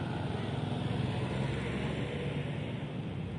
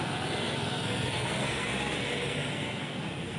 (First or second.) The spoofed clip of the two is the second